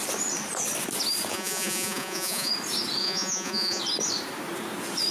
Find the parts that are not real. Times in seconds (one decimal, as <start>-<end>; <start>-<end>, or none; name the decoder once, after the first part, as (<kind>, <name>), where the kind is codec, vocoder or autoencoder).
1.3-2.5 (vocoder, Vocos); 3.0-3.8